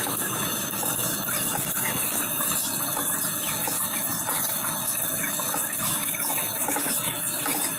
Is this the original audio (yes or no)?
no